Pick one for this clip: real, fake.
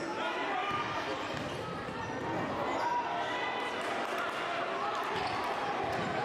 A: real